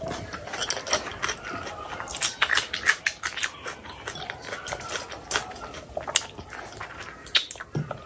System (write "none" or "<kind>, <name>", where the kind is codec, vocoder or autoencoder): none